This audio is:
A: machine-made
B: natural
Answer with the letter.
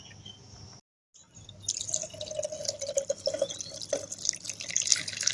B